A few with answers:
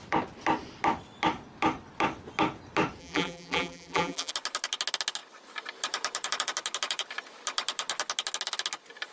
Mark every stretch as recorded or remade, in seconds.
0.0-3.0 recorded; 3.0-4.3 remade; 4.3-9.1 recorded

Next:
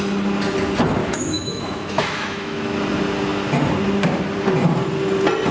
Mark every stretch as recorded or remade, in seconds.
0.0-1.0 recorded; 1.0-2.8 remade; 2.8-5.5 recorded

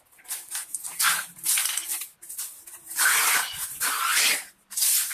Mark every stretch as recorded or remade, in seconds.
0.0-5.1 recorded